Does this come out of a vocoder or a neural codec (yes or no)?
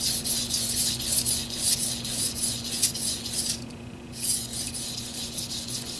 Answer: yes